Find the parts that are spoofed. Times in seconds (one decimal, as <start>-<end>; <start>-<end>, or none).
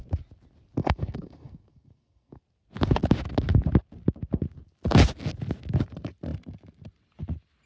0.8-2.4